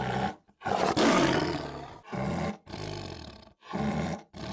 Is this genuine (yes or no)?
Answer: yes